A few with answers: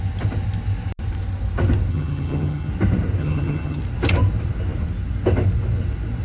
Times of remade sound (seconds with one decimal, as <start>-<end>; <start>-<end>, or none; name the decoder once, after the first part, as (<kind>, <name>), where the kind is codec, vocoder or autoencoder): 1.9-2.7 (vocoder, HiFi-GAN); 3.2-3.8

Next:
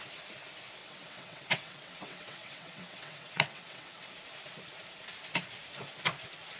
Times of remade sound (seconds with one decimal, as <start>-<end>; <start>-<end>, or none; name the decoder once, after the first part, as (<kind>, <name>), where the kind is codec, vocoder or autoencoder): 0.8-4.0 (vocoder, WaveNeXt)

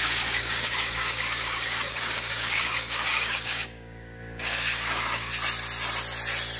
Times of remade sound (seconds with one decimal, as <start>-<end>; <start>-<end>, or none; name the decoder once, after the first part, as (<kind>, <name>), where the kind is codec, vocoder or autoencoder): 0.0-5.3 (codec, DAC)

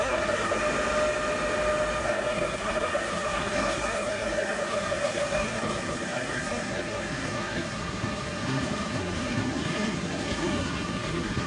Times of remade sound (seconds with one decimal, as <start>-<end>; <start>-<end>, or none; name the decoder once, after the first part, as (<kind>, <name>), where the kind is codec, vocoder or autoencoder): 0.0-0.6 (codec, SNAC); 2.0-11.5

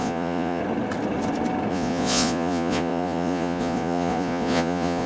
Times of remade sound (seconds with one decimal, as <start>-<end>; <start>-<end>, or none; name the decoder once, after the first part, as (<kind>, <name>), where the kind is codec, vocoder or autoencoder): 0.0-0.6 (vocoder, Vocos); 1.7-5.1

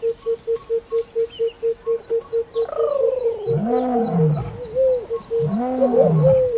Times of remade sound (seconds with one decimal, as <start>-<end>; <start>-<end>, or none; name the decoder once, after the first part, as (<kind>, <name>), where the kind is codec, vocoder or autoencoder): none

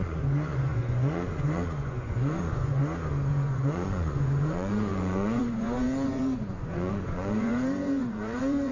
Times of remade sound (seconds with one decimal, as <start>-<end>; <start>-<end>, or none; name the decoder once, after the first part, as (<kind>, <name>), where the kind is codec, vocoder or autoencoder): 0.0-2.8 (vocoder, Vocos); 3.3-8.7

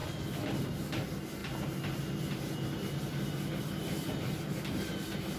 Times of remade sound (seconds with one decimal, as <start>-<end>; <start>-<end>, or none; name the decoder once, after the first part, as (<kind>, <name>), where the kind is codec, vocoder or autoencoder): none